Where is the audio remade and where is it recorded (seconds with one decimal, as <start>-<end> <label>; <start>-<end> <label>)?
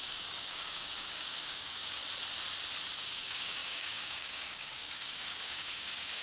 0.0-2.0 remade; 2.0-3.0 recorded; 3.0-6.2 remade